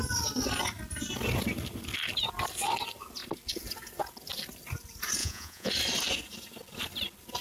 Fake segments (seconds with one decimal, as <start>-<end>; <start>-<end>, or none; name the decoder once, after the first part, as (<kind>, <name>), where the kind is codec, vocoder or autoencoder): 5.2-5.7 (vocoder, Vocos)